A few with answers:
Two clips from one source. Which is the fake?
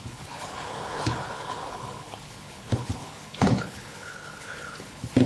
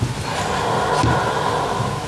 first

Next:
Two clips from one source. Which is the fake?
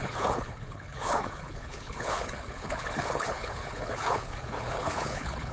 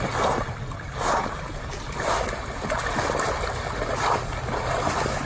first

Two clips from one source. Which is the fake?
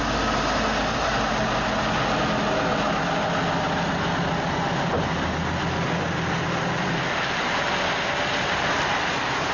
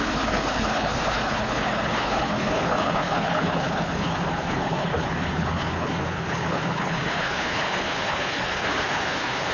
second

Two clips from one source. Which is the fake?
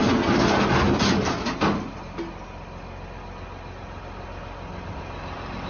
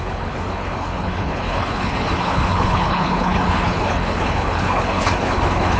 second